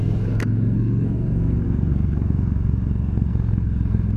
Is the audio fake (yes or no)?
yes